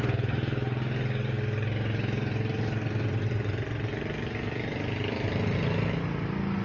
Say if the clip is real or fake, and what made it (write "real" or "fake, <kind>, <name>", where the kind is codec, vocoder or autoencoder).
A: real